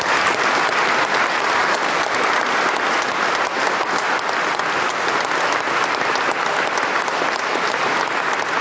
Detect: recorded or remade recorded